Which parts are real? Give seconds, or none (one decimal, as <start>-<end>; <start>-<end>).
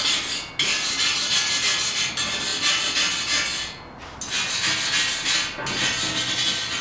0.0-6.8